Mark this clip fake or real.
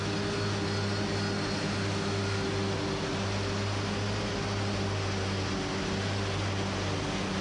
real